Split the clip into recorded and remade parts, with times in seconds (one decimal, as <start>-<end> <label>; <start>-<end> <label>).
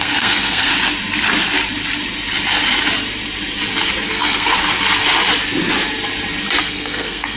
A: 0.0-0.7 remade; 0.7-4.1 recorded; 4.1-4.5 remade; 4.5-6.6 recorded; 6.6-7.4 remade